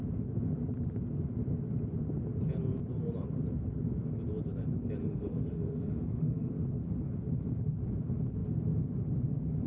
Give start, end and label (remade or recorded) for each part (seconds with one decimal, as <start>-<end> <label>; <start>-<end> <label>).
0.0-5.0 recorded; 5.0-6.5 remade; 6.5-9.7 recorded